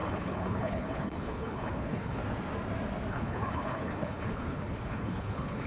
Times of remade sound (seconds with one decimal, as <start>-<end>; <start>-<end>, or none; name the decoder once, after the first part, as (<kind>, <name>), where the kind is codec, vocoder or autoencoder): 0.0-2.2 (codec, HILCodec); 3.1-5.7